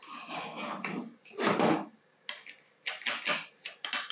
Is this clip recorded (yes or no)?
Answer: yes